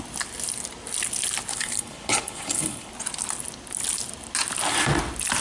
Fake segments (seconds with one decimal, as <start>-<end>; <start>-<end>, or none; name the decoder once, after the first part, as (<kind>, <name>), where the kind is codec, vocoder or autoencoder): 1.5-2.9 (codec, HILCodec)